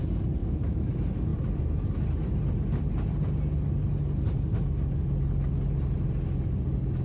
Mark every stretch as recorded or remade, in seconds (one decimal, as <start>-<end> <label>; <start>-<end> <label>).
0.0-0.4 recorded; 0.4-0.9 remade; 0.9-7.0 recorded